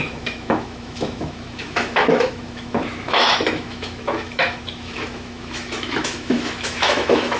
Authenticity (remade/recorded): remade